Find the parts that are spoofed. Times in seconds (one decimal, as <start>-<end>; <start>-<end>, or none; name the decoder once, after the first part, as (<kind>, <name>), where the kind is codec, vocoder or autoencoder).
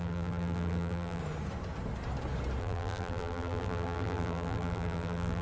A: 0.0-1.2 (vocoder, BigVGAN v2); 2.6-5.4